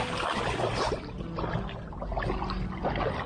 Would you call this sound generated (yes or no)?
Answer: no